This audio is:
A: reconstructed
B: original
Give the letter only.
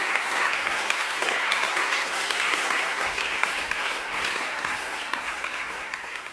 A